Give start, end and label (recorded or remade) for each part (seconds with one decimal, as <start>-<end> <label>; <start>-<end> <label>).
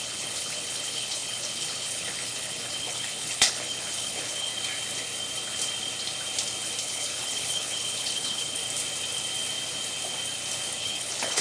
0.0-4.5 remade; 4.5-6.8 recorded; 6.8-8.6 remade; 8.6-10.8 recorded; 10.8-11.4 remade